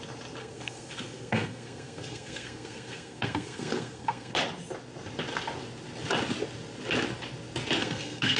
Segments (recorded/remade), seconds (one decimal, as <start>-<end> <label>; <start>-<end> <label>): 0.0-0.4 recorded; 0.4-4.3 remade; 4.3-7.8 recorded; 7.8-8.4 remade